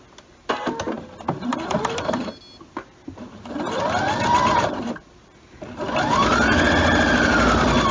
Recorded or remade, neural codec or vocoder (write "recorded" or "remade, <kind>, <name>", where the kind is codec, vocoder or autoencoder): recorded